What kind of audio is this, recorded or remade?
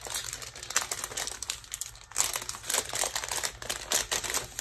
recorded